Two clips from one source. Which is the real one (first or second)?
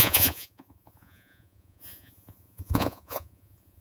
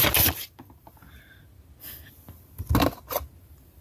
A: second